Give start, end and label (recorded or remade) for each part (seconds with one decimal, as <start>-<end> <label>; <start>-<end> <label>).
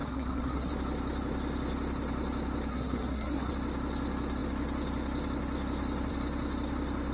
0.0-0.7 remade; 0.7-2.7 recorded; 2.7-3.5 remade; 3.5-7.1 recorded